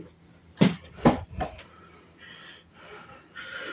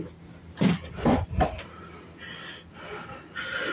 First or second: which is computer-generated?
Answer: first